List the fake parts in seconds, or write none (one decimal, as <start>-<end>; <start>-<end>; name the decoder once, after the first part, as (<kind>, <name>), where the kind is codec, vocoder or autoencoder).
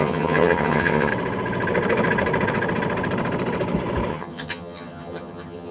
0.0-1.1 (vocoder, HiFi-GAN); 4.1-5.7